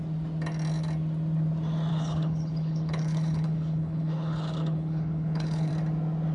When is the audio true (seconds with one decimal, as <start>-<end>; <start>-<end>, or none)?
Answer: 0.0-1.9; 5.7-6.3